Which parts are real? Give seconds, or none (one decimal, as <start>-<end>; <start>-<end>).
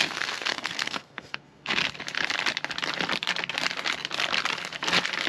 1.8-5.3